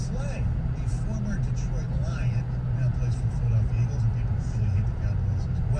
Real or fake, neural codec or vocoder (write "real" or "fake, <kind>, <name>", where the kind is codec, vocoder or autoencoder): real